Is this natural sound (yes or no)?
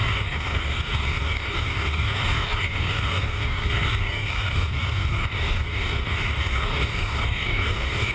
no